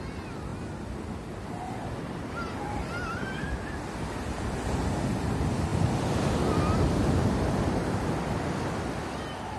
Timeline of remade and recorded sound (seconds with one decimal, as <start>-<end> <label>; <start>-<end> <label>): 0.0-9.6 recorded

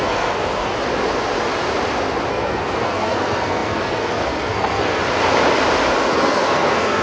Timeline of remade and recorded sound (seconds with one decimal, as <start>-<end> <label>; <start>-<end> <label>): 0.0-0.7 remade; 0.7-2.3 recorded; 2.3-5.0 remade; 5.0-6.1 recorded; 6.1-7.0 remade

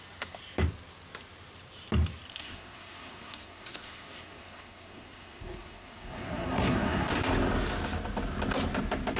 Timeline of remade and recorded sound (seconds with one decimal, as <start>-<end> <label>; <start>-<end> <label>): 0.0-2.3 recorded; 2.3-7.1 remade; 7.1-9.2 recorded